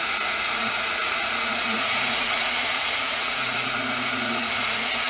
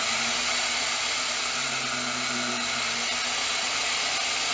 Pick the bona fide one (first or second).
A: second